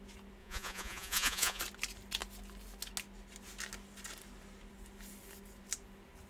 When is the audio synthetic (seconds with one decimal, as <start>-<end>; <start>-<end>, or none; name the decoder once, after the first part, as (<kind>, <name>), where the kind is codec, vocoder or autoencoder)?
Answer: 0.4-1.6 (vocoder, Vocos)